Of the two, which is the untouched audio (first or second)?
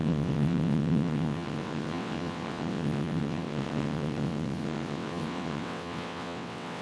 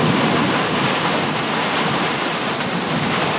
second